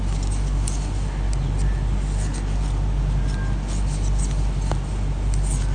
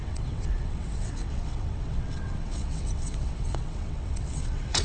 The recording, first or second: first